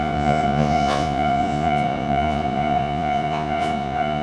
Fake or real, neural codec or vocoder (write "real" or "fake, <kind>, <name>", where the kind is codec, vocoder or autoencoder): fake, vocoder, Vocos